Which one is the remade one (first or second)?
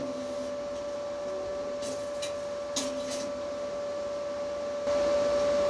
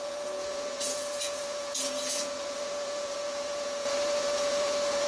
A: second